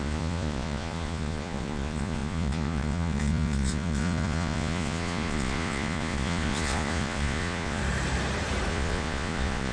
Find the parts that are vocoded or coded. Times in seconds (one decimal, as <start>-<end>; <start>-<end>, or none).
0.0-7.8; 8.7-9.7